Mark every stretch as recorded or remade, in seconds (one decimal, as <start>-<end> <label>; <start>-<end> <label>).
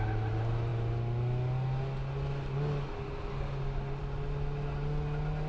0.0-5.5 recorded